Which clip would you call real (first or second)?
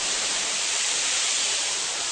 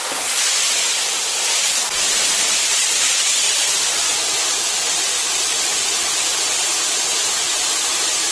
second